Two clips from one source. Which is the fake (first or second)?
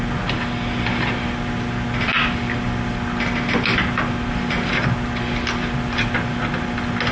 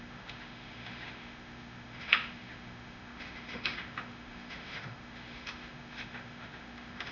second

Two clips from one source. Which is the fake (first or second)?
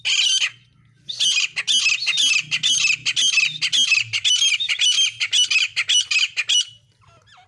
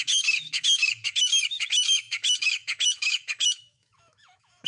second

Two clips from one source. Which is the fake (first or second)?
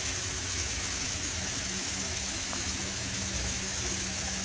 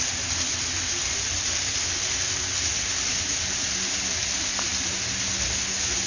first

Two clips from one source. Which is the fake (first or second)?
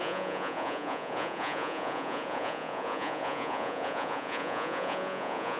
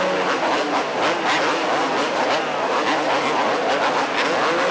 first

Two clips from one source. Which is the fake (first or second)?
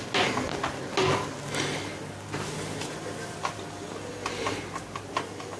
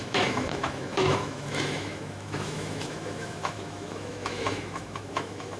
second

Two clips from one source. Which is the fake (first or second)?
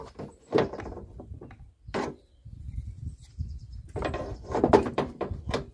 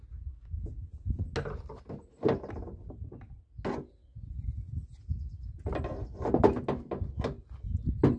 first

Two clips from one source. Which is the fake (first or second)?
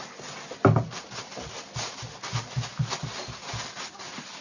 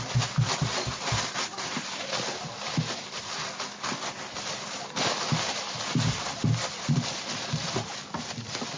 second